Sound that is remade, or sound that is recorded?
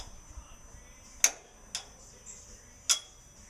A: recorded